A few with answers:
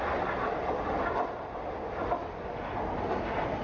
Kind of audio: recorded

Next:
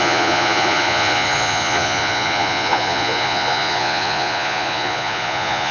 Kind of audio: remade